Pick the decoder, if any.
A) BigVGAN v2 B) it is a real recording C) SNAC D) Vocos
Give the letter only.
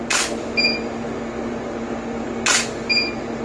B